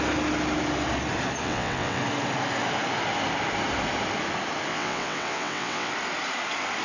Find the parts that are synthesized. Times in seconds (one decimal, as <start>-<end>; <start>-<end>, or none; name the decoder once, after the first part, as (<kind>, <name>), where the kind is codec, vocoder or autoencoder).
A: 1.4-2.0 (vocoder, WaveNeXt); 4.7-5.9